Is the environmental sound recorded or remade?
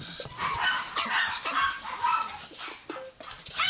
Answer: recorded